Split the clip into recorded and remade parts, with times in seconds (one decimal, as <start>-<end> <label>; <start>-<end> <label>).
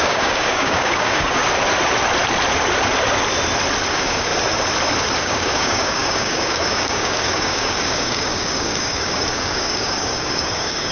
0.0-1.4 remade; 1.4-3.9 recorded; 3.9-4.3 remade; 4.3-5.2 recorded; 5.2-10.9 remade